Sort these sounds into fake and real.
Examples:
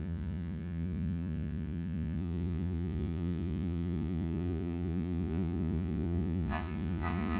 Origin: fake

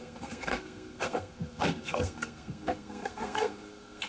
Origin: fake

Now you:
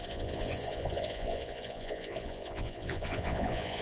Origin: fake